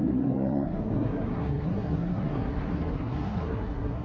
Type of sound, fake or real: fake